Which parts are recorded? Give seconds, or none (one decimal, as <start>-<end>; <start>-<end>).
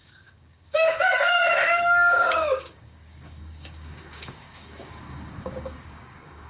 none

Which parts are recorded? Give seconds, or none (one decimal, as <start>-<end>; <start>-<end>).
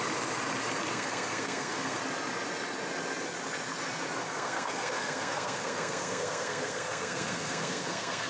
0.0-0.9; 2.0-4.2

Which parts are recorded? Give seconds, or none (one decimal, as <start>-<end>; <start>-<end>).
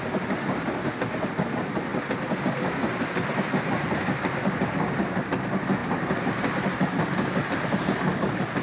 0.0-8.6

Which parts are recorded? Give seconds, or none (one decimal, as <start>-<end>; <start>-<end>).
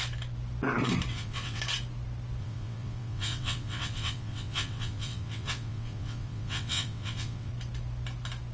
0.0-1.1; 1.6-2.4; 7.5-8.5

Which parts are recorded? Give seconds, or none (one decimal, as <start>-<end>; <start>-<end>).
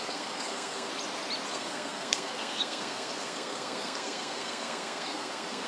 0.9-1.5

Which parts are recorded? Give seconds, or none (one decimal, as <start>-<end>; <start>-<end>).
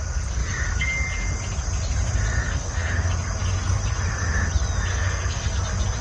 0.0-2.4; 2.9-4.9; 5.6-6.0